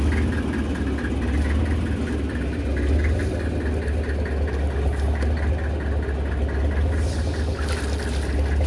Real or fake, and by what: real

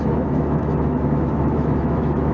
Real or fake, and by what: fake, autoencoder, DAC-VAE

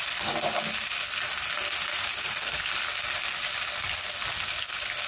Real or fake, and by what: real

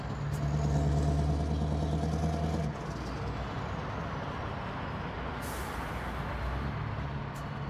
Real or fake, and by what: real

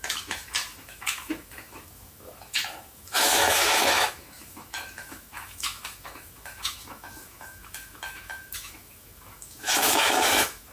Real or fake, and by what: fake, autoencoder, DAC-VAE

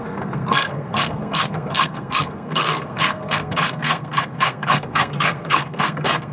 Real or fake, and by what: fake, codec, SNAC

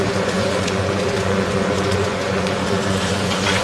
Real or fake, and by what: fake, vocoder, Vocos